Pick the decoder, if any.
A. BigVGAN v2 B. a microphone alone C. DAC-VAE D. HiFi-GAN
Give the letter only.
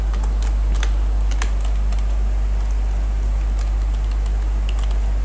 B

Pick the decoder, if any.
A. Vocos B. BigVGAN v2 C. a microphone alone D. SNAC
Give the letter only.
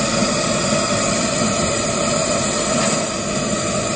C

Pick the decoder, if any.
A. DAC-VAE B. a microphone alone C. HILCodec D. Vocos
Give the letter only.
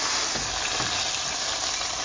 B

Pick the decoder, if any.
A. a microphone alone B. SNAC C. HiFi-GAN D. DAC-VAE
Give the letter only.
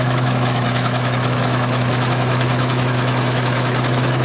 D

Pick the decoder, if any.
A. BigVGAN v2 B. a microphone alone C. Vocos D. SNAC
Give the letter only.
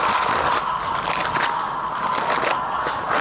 B